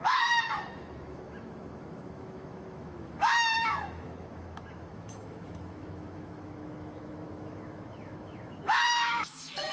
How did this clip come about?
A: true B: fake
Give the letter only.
B